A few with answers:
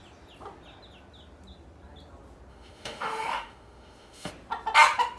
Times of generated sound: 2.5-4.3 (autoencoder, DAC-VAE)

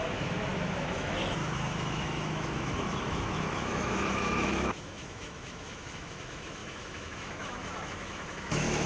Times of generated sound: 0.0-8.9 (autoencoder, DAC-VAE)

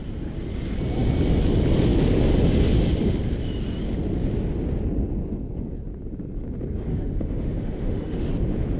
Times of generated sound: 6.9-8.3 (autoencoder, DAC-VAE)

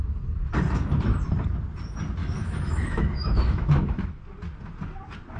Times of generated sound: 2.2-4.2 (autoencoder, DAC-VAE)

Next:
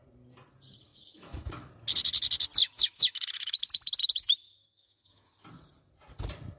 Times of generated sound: 0.9-1.7 (autoencoder, DAC-VAE); 2.6-3.6; 4.0-5.3